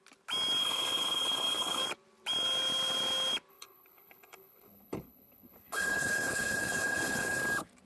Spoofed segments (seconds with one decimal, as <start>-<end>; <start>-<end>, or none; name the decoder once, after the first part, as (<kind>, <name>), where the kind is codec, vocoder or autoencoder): 0.6-1.8 (codec, HILCodec); 3.5-7.4